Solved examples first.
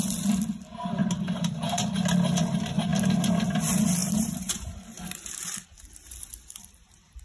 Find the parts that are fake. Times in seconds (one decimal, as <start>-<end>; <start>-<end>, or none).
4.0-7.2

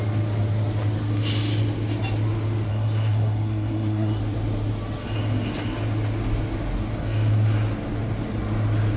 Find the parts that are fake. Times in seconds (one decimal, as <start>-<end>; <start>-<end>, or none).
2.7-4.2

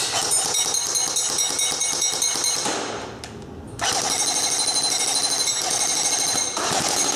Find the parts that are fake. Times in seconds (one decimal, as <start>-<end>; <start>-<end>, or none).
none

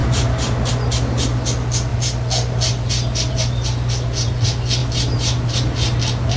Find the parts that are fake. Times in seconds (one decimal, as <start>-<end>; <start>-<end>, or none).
0.0-0.7; 4.8-6.0

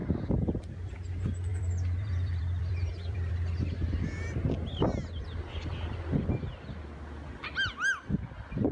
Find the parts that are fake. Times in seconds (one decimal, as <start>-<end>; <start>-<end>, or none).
0.0-0.9; 1.5-3.3

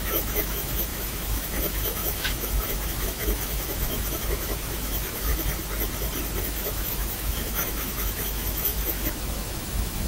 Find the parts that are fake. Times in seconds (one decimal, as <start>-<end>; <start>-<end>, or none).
0.0-5.3; 6.4-10.1